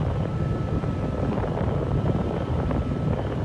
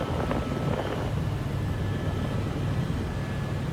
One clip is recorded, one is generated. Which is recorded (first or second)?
second